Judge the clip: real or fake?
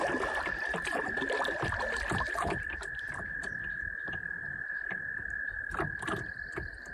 real